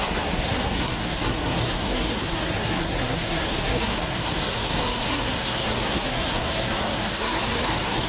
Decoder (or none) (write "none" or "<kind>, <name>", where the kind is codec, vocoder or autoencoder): codec, SNAC